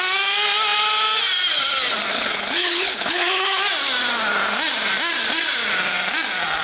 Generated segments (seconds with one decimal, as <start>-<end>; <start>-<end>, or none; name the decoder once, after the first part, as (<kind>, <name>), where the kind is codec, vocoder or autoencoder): 2.1-3.6 (codec, HILCodec)